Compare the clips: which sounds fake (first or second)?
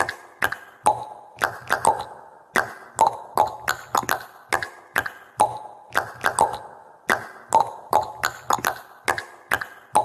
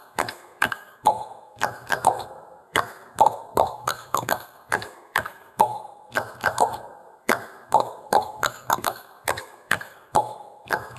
second